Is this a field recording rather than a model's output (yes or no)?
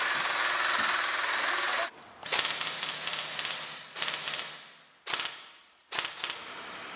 yes